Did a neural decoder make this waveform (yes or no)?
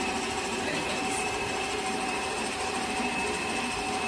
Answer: yes